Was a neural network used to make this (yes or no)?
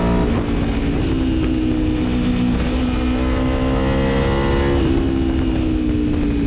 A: no